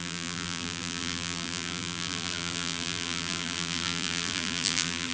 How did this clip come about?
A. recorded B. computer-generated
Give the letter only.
B